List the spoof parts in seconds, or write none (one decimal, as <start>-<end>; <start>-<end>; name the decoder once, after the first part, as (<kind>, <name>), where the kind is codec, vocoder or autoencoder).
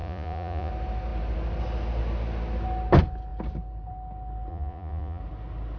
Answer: 0.0-0.7 (vocoder, Vocos); 4.5-5.2